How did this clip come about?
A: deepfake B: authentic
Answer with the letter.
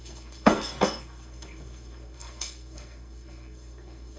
A